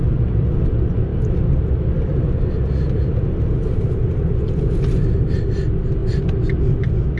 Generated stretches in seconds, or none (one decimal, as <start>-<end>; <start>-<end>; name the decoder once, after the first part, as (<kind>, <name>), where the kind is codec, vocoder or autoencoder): none